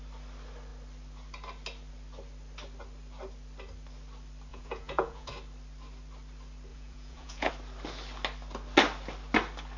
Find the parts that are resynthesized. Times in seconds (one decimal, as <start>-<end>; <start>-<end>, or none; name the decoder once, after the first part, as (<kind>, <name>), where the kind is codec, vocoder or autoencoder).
4.5-5.3 (vocoder, Vocos); 6.7-7.5